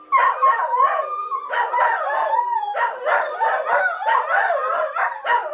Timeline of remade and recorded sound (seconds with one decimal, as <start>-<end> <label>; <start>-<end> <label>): 0.0-1.1 recorded; 1.1-2.4 remade; 2.4-5.5 recorded